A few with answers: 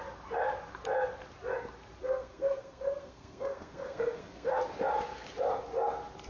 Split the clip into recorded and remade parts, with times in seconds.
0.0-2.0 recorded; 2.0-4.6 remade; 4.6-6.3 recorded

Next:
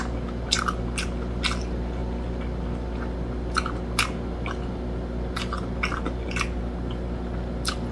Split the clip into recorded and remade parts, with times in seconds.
0.0-7.9 recorded

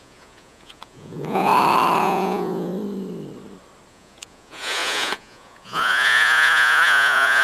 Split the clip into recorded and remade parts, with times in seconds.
0.0-1.5 remade; 1.5-2.0 recorded; 2.0-2.7 remade; 2.7-3.9 recorded; 3.9-7.4 remade